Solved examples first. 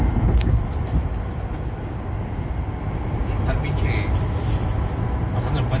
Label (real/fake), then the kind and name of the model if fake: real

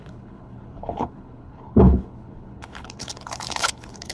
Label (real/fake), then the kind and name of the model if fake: fake, codec, HILCodec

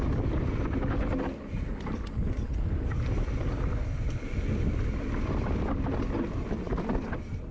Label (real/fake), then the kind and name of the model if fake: real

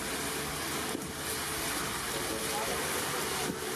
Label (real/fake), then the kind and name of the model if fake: real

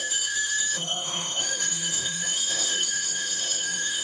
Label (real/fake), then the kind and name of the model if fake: fake, autoencoder, DAC-VAE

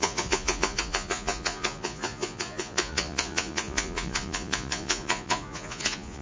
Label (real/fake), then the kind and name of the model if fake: fake, vocoder, Vocos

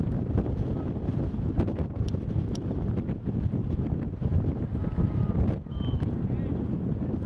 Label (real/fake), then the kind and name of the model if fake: real